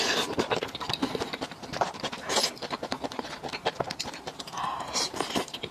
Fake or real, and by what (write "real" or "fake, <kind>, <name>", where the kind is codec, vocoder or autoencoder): fake, vocoder, BigVGAN v2